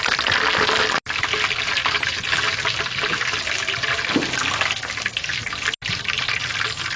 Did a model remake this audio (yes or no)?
no